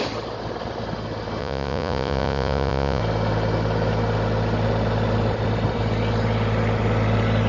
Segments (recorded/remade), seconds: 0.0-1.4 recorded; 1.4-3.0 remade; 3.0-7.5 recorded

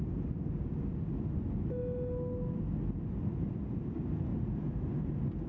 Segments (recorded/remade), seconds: 0.0-4.3 recorded; 4.3-5.1 remade; 5.1-5.5 recorded